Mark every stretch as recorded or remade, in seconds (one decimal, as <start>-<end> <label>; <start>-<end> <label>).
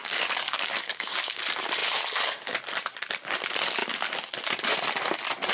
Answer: 0.0-1.4 remade; 1.4-5.5 recorded